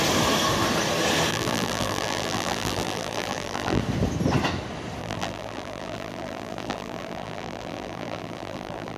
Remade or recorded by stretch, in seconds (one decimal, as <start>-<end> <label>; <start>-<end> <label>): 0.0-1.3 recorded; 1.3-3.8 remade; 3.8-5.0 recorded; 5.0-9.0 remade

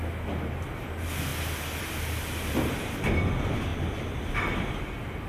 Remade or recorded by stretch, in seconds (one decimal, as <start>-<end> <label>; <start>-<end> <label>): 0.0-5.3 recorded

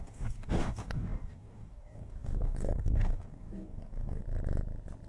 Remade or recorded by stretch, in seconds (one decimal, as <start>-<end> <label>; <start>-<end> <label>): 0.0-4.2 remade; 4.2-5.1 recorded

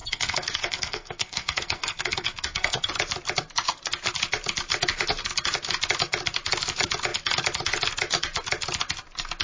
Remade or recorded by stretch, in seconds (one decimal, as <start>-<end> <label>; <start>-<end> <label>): 0.0-2.9 remade; 2.9-9.4 recorded

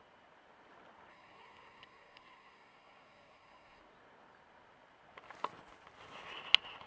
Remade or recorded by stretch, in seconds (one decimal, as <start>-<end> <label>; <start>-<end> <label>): 0.0-1.1 recorded; 1.1-3.8 remade; 3.8-6.9 recorded